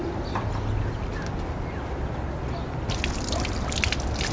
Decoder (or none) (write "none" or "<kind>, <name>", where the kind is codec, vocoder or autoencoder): none